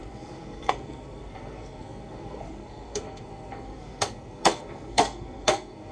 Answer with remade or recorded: remade